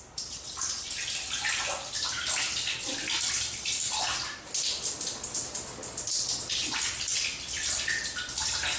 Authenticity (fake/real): real